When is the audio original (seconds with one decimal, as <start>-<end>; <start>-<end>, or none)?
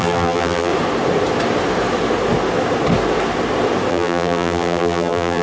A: 0.7-3.9